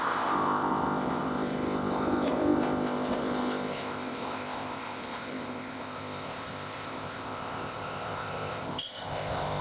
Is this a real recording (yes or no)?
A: no